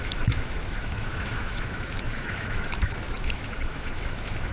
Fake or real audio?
fake